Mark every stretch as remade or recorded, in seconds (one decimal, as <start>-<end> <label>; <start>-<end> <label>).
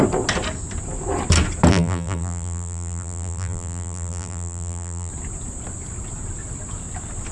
0.0-1.7 recorded; 1.7-5.1 remade; 5.1-7.3 recorded